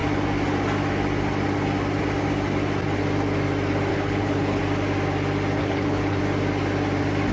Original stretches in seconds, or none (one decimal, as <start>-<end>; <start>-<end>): 0.0-3.9; 4.6-5.6; 6.2-7.3

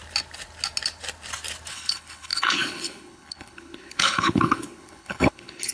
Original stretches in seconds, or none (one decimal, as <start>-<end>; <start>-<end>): 0.0-1.7

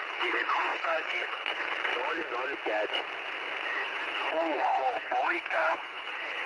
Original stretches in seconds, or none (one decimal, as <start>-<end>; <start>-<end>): 1.9-3.7

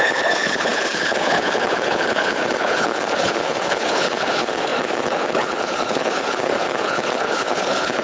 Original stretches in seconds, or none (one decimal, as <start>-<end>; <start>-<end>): none